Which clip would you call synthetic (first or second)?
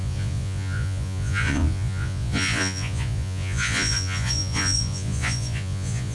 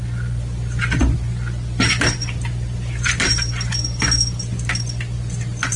first